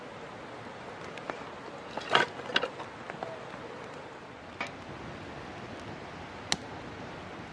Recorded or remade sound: recorded